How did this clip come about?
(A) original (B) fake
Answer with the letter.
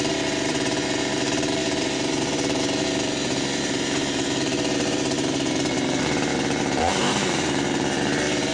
B